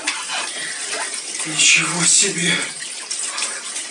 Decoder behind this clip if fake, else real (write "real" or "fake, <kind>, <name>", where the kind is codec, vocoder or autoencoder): real